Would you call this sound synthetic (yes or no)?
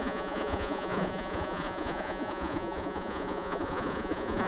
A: yes